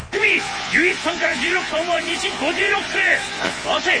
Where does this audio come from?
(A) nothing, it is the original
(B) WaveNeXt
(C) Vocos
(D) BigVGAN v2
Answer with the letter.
C